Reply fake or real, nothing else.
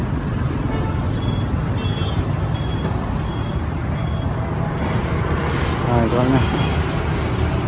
real